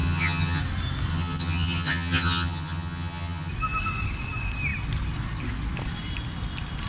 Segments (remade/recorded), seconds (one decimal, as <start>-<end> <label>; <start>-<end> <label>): 0.0-0.6 remade; 0.6-1.1 recorded; 1.1-3.5 remade; 3.5-6.9 recorded